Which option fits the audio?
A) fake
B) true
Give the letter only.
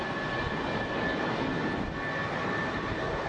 B